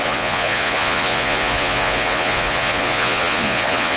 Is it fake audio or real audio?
fake